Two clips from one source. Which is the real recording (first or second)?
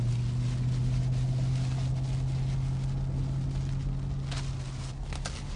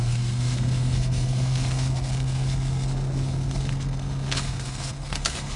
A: first